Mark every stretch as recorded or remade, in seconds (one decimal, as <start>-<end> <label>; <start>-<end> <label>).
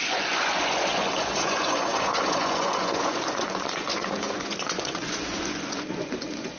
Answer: 0.0-6.6 remade